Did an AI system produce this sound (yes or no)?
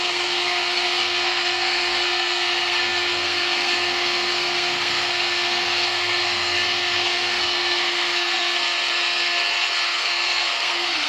yes